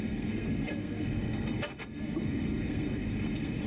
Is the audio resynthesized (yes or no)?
yes